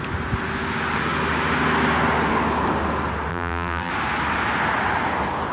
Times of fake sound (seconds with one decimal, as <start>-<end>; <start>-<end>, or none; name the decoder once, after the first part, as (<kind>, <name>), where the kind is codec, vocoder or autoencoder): 3.3-3.9 (vocoder, BigVGAN v2)